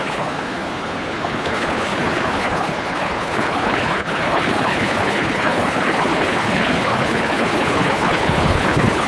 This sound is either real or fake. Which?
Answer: fake